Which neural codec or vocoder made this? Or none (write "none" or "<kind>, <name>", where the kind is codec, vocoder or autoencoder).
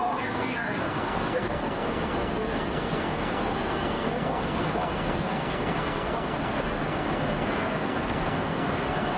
codec, SNAC